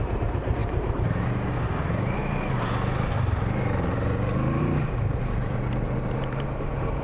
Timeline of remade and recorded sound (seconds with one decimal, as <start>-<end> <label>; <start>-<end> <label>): 0.0-2.2 remade; 2.2-4.6 recorded; 4.6-7.0 remade